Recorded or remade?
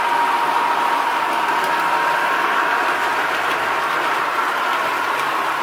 recorded